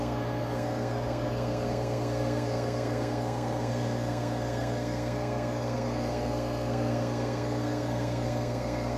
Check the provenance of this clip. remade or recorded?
remade